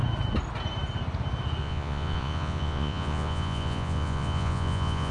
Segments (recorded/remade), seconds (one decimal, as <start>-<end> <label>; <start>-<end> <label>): 0.0-1.6 recorded; 1.6-5.1 remade